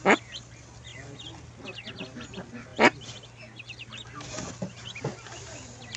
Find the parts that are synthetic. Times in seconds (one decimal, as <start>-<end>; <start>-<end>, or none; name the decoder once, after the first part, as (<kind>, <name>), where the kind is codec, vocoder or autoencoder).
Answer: none